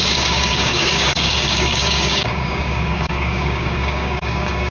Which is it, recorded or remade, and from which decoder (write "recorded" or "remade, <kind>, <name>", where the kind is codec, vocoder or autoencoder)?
remade, codec, DAC